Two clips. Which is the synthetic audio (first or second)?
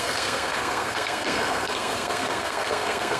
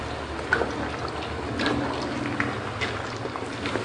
first